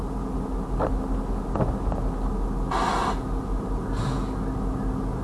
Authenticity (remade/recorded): recorded